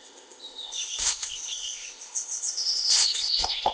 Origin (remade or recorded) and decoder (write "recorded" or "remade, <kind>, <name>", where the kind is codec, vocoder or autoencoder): remade, codec, ZipCodec